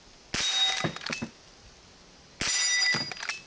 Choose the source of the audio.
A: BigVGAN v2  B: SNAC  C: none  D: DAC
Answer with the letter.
C